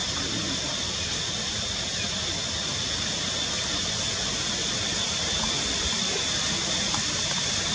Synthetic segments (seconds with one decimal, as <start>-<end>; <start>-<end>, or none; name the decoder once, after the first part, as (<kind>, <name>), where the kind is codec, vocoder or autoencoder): none